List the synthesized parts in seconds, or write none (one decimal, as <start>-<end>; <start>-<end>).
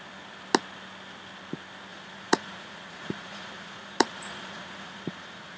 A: 1.9-5.6